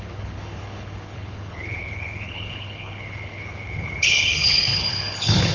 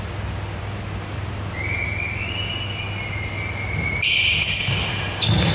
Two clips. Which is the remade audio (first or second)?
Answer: first